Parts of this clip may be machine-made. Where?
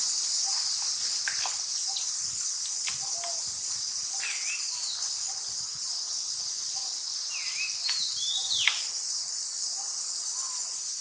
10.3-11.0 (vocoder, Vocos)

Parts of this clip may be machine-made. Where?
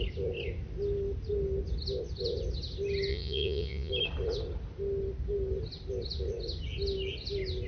3.1-3.9 (vocoder, Vocos)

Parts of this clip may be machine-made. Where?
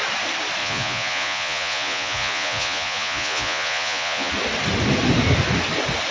0.6-4.3 (vocoder, Vocos)